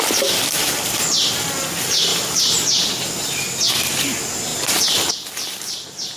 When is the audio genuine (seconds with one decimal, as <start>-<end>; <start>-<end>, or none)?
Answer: 0.0-6.2